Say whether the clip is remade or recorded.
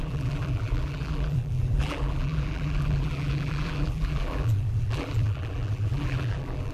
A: remade